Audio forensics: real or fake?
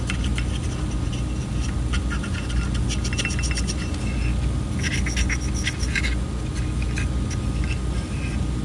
real